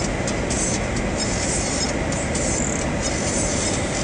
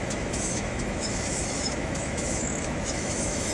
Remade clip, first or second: second